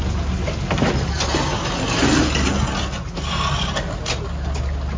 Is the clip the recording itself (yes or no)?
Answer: yes